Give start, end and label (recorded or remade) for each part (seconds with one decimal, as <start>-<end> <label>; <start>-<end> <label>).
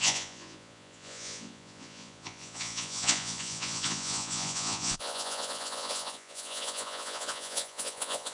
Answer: 0.0-8.3 remade